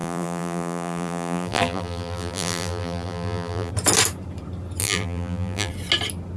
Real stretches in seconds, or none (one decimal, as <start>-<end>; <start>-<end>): 3.7-4.8; 5.7-6.4

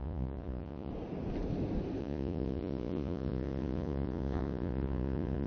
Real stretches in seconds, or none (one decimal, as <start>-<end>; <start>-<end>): 0.9-2.0